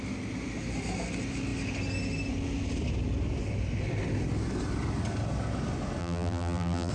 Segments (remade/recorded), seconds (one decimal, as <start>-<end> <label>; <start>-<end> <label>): 0.0-6.0 recorded; 6.0-6.9 remade